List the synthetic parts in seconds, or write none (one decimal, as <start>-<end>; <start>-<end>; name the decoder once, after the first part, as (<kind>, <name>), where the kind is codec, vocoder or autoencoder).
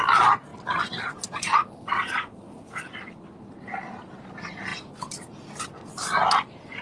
none